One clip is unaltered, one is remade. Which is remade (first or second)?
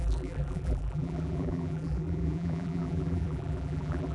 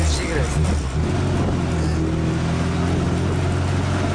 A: first